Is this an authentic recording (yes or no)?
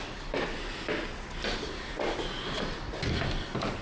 yes